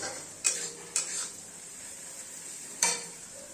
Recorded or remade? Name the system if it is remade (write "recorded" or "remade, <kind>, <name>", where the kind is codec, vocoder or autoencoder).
remade, vocoder, BigVGAN v2